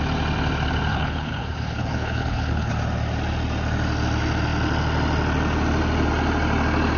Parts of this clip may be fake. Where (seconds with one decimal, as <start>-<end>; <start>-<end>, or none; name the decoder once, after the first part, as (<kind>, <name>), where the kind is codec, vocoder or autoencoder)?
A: 0.9-2.7 (codec, HILCodec)